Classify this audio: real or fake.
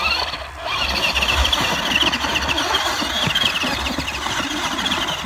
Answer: real